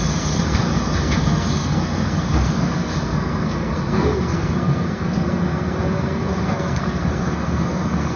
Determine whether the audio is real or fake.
fake